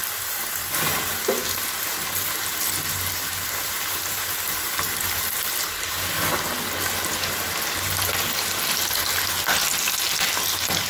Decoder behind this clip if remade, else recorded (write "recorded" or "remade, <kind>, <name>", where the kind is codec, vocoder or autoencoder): recorded